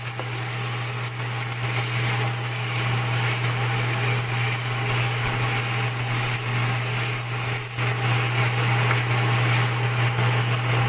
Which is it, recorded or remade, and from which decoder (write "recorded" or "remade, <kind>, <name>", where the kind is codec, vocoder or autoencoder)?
recorded